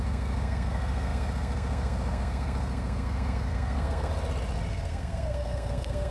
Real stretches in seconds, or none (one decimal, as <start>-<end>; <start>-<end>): 4.1-4.7